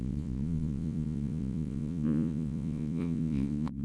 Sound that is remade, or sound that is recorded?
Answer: remade